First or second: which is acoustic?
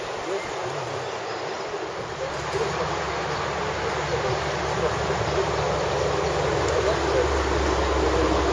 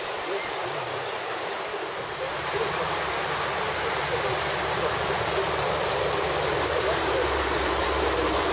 first